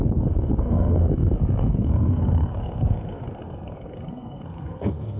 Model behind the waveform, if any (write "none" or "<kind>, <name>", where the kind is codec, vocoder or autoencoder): codec, SNAC